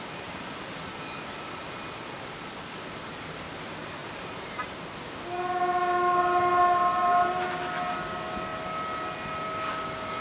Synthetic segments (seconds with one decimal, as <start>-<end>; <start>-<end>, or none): 4.0-5.0